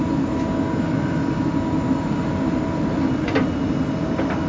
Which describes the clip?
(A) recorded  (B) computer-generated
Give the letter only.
A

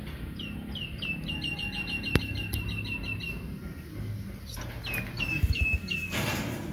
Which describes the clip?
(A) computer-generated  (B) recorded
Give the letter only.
B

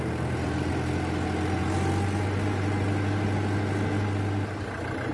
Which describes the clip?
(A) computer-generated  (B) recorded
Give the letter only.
B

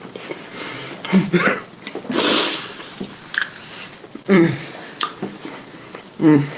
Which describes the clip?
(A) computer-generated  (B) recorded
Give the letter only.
A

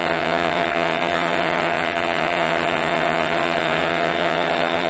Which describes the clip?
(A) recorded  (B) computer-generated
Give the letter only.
B